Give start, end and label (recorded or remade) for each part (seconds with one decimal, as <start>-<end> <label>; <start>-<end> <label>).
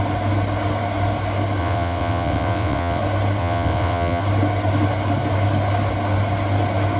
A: 0.0-1.6 recorded; 1.6-3.0 remade; 3.0-3.4 recorded; 3.4-4.2 remade; 4.2-7.0 recorded